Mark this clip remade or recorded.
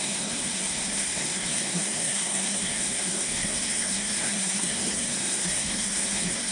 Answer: remade